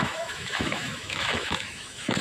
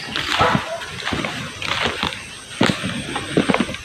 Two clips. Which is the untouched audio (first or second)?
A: second